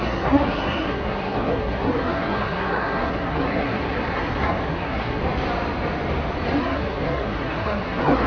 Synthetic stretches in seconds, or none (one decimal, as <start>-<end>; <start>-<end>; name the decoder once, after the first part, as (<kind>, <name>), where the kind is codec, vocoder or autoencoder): 0.0-5.2 (codec, SNAC); 6.6-8.3

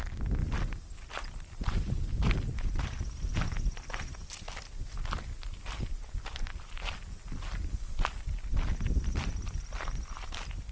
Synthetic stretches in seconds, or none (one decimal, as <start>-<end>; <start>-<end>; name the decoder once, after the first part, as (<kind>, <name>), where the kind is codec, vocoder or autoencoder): none

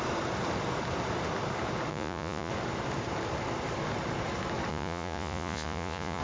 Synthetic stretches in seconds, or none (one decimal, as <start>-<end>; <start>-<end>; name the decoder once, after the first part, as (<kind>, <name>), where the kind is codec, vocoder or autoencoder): 1.9-2.5 (vocoder, Vocos); 4.7-6.2

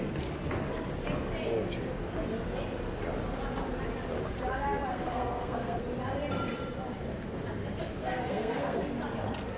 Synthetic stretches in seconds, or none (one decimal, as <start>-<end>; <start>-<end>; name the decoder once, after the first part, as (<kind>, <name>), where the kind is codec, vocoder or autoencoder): 4.9-5.8 (codec, SNAC); 8.0-8.8

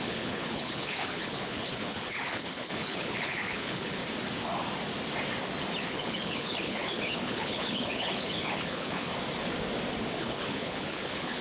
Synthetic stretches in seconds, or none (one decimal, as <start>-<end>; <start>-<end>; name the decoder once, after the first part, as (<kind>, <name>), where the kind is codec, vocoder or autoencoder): 0.0-4.0 (codec, HILCodec); 5.8-9.1; 10.2-11.4